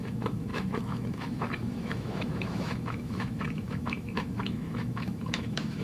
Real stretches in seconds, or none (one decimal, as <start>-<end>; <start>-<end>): none